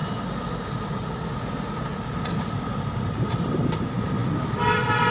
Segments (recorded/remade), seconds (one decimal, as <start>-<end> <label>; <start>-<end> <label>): 0.0-2.4 recorded; 2.4-4.2 remade; 4.2-5.1 recorded